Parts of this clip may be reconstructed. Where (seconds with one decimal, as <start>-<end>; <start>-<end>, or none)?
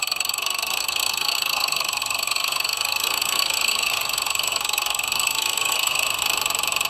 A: 0.0-6.2